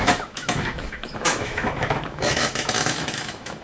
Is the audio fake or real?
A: fake